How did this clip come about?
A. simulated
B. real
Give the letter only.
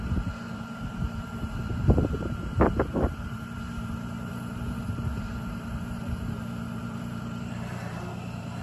A